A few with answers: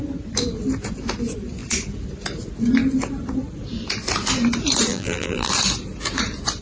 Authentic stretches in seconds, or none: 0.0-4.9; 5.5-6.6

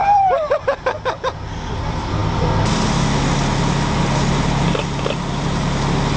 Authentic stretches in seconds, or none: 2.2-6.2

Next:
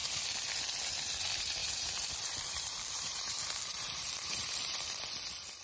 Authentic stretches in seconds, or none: 0.0-1.6; 5.0-5.6

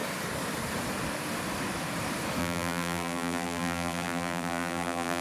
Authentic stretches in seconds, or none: 0.0-2.4

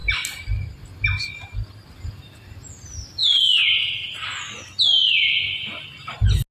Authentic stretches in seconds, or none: 0.8-6.5

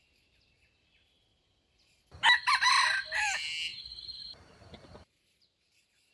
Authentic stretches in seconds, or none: 0.0-3.7